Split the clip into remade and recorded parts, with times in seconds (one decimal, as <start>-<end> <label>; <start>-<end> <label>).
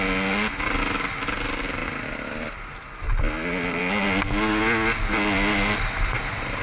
0.0-6.6 recorded